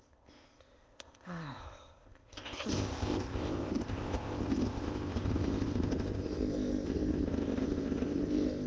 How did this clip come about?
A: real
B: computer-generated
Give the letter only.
B